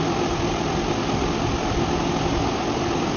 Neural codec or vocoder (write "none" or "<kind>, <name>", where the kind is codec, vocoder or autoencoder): none